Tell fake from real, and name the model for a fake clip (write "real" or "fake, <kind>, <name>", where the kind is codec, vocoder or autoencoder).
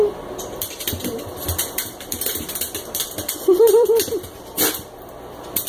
fake, vocoder, BigVGAN v2